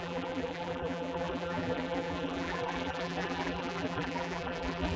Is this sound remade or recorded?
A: remade